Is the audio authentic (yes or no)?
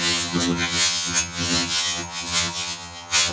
no